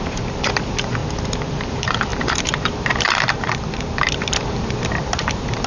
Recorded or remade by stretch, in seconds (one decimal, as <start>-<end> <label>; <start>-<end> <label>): 0.0-1.0 remade; 1.0-1.7 recorded; 1.7-5.7 remade